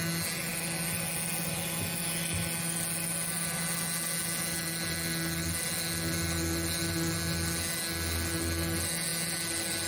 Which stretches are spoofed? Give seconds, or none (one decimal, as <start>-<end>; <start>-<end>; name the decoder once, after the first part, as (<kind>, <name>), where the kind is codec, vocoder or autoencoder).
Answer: none